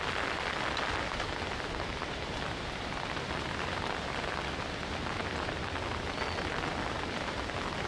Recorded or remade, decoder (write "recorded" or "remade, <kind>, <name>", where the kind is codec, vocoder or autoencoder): recorded